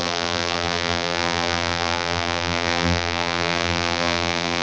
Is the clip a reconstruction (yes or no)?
yes